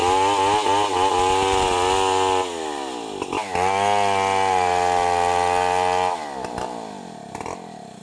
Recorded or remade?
recorded